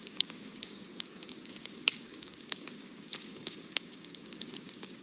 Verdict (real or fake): fake